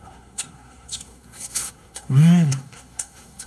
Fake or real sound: fake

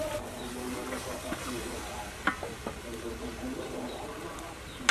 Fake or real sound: real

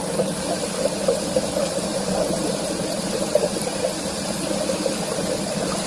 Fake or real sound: real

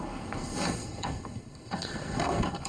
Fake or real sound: fake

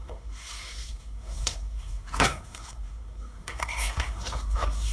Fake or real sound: fake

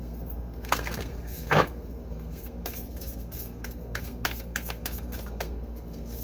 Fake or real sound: fake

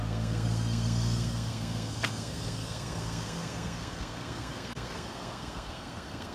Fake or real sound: fake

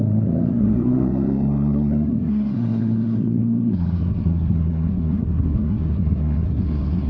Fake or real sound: fake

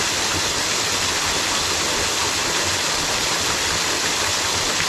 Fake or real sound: real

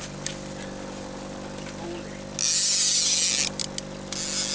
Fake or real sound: real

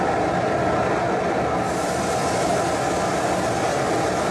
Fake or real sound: real